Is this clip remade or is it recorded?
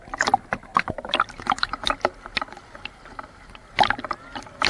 recorded